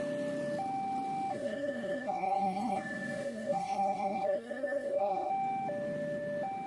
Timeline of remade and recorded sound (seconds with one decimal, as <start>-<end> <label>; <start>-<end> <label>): 0.0-1.3 recorded; 1.3-5.3 remade; 5.3-6.7 recorded